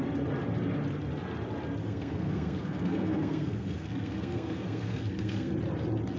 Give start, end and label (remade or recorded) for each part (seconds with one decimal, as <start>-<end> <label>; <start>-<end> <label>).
0.0-1.8 recorded; 1.8-5.5 remade; 5.5-6.2 recorded